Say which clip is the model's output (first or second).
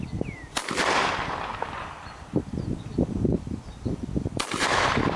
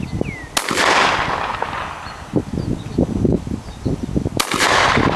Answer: first